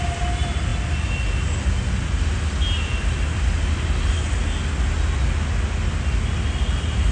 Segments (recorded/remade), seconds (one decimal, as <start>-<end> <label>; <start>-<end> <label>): 0.0-7.1 recorded